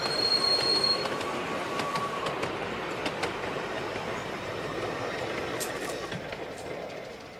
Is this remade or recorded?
remade